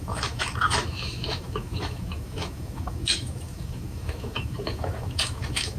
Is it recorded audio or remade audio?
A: remade